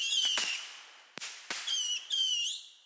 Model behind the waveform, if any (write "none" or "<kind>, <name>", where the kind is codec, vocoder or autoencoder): none